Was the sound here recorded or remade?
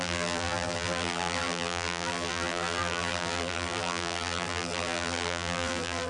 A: remade